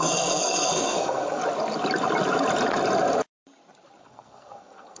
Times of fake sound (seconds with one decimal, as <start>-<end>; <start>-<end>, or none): 0.0-1.4; 4.0-5.0